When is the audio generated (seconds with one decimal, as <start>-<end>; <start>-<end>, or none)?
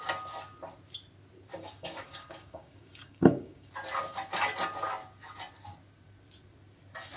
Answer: 1.5-3.7